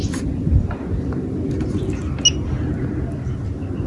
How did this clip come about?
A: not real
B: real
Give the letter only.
B